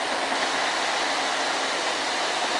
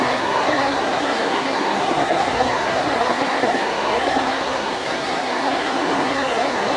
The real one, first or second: first